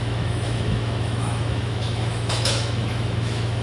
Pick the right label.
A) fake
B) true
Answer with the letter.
A